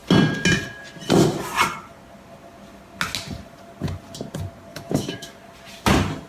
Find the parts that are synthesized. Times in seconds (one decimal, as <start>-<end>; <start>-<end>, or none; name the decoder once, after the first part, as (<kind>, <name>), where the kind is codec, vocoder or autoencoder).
4.7-5.3 (autoencoder, DAC-VAE)